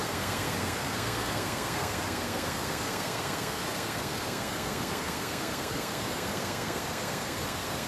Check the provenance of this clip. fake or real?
fake